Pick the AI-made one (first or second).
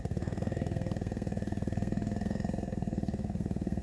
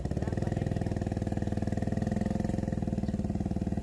first